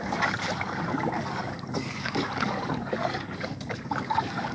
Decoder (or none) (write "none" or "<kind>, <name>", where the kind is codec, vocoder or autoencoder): codec, DAC